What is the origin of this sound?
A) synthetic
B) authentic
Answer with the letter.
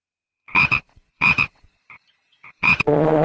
A